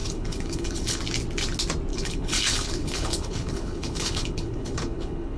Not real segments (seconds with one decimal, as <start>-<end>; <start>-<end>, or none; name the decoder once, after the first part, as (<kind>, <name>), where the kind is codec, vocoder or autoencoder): 0.0-1.0 (codec, HILCodec); 1.9-5.4